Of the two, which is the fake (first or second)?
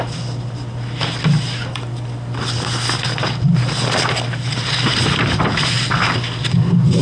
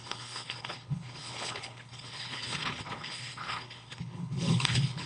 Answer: second